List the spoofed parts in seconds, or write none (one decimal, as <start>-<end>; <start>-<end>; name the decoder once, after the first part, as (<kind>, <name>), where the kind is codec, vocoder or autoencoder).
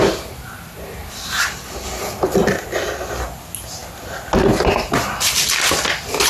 none